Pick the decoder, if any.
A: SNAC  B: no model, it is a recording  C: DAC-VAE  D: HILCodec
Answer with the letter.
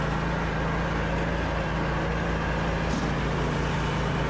B